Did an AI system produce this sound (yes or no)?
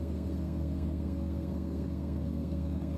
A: yes